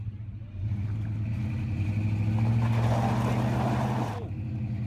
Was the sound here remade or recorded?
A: recorded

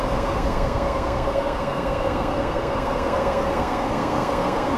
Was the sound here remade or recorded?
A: remade